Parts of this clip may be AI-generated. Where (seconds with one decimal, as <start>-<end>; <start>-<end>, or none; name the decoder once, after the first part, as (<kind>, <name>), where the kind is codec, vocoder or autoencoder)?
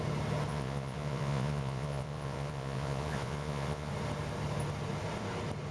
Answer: 0.5-3.9 (vocoder, Vocos)